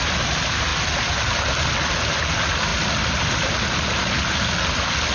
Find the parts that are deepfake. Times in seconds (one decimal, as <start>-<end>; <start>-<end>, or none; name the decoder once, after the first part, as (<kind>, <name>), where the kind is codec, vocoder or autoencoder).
none